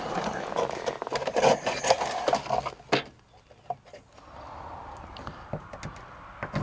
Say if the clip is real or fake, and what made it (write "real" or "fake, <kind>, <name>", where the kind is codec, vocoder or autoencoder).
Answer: real